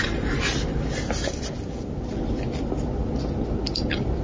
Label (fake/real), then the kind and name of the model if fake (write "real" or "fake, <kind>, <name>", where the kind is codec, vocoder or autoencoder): real